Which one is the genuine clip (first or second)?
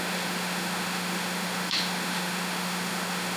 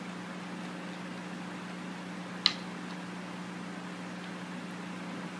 second